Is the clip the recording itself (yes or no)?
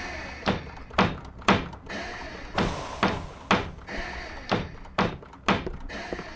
yes